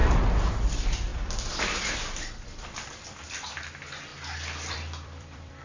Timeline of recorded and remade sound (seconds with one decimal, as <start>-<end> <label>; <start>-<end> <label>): 0.0-0.7 recorded; 0.7-4.1 remade; 4.1-4.7 recorded; 4.7-5.6 remade